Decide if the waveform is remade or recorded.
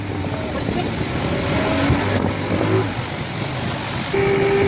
recorded